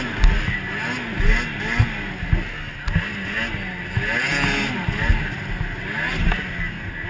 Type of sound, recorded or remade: recorded